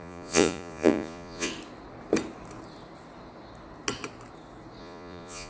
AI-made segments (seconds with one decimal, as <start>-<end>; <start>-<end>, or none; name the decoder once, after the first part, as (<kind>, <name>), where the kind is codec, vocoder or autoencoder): 0.0-1.5 (vocoder, Vocos); 4.8-5.5